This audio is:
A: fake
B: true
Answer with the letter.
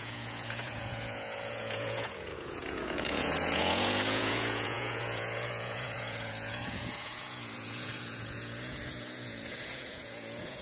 A